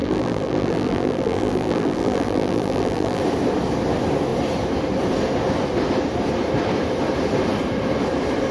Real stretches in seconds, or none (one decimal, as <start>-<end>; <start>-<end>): 3.2-8.5